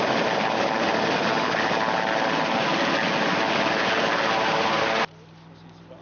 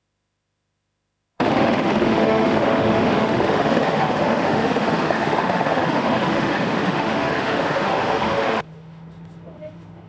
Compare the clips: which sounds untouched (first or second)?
first